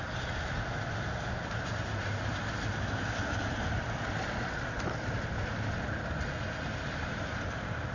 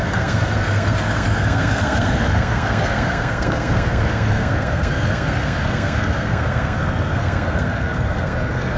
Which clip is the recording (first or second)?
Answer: first